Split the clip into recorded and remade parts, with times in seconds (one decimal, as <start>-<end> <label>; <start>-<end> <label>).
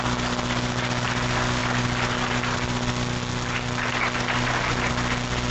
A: 0.0-5.5 recorded